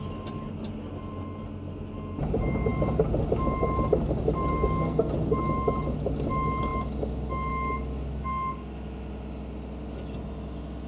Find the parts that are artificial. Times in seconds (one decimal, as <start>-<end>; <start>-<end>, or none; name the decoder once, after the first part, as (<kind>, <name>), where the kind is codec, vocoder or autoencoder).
4.5-5.1 (codec, SNAC)